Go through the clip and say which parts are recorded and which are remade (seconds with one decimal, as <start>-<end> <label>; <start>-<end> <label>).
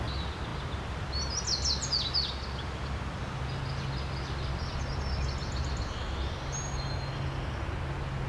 0.0-8.3 recorded